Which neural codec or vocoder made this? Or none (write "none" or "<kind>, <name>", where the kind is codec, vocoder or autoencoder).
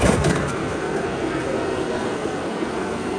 codec, SNAC